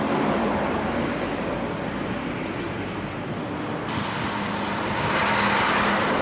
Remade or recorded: recorded